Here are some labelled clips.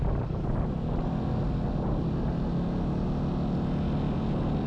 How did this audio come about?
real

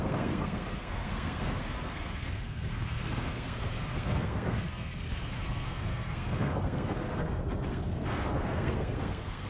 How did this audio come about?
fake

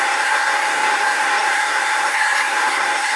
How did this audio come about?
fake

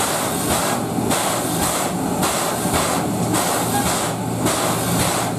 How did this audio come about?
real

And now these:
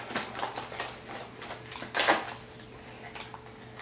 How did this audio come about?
real